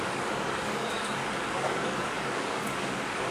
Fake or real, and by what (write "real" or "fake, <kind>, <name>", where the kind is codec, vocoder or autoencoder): fake, codec, DAC